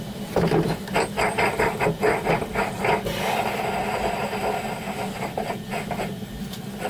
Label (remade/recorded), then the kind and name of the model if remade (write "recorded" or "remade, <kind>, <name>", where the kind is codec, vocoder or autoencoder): recorded